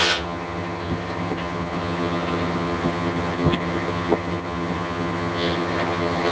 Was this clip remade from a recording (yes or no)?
yes